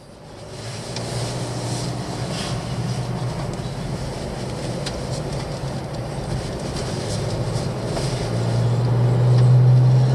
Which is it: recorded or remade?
recorded